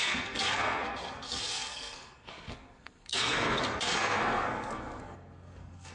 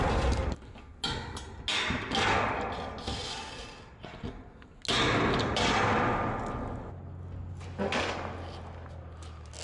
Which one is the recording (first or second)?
second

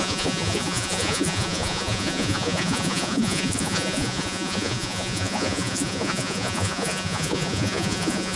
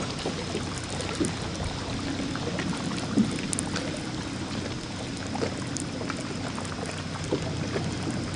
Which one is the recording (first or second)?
second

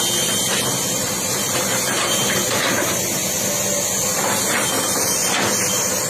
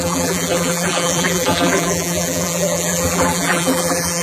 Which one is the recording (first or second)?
first